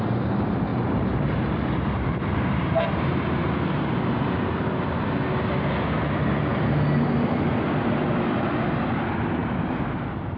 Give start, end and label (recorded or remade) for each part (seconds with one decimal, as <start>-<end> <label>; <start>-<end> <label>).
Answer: 0.0-0.7 recorded; 0.7-5.0 remade; 5.0-9.4 recorded; 9.4-10.0 remade; 10.0-10.4 recorded

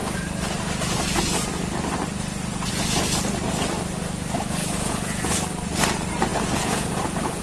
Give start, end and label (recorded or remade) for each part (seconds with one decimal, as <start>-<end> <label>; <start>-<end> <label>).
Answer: 0.0-4.6 recorded; 4.6-5.3 remade; 5.3-6.3 recorded; 6.3-7.4 remade

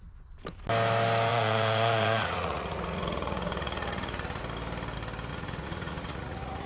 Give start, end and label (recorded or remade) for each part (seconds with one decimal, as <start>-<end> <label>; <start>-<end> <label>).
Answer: 0.0-1.3 recorded; 1.3-4.4 remade; 4.4-5.3 recorded; 5.3-6.7 remade

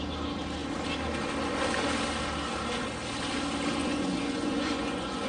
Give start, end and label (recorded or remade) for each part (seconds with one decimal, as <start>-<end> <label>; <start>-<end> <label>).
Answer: 0.0-3.8 recorded; 3.8-5.3 remade

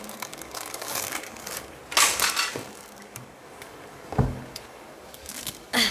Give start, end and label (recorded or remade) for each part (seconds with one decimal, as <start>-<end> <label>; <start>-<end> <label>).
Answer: 0.0-1.8 remade; 1.8-2.5 recorded; 2.5-5.9 remade

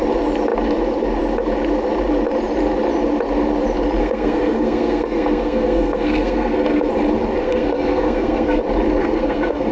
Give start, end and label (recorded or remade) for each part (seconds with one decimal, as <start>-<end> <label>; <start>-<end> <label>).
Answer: 0.0-4.0 recorded; 4.0-6.9 remade; 6.9-7.4 recorded; 7.4-8.6 remade; 8.6-9.0 recorded; 9.0-9.7 remade

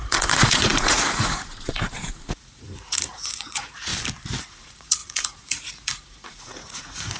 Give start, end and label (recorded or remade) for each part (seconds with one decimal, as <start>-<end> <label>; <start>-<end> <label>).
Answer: 0.0-3.9 remade; 3.9-4.4 recorded; 4.4-7.2 remade